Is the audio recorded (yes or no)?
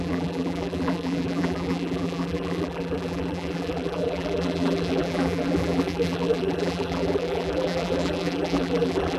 no